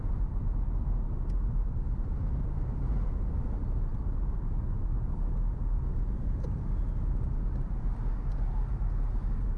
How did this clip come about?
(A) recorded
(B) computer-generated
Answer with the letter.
A